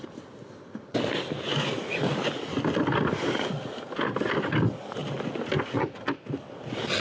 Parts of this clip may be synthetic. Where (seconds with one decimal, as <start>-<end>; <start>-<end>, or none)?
none